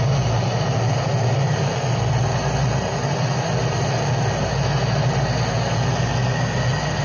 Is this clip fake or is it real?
real